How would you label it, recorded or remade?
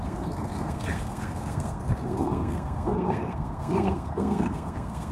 remade